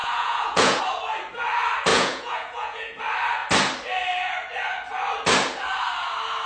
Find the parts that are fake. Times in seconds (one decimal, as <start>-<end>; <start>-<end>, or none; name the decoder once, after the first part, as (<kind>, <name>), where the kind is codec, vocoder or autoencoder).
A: 0.0-0.8 (vocoder, Vocos); 1.9-3.0